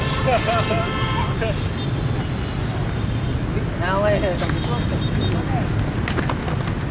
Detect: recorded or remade recorded